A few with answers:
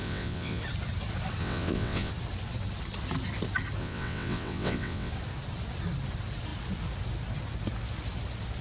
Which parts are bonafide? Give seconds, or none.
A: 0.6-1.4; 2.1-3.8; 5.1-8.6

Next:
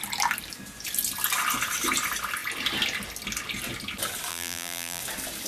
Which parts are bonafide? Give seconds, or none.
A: 0.0-4.3; 5.0-5.5

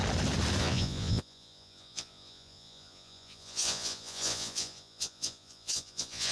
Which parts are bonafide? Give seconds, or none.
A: 0.0-0.6

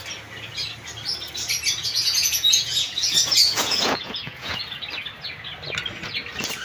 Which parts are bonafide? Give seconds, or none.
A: 0.0-1.8; 4.6-6.6